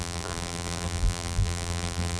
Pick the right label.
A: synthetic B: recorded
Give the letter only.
A